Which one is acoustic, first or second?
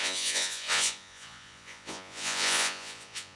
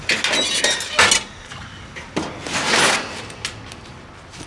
second